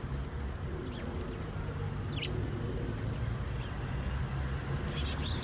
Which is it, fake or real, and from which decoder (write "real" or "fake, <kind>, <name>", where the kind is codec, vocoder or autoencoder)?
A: real